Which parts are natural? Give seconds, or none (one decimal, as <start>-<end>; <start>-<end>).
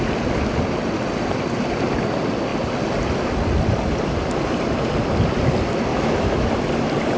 0.0-5.9; 6.5-7.2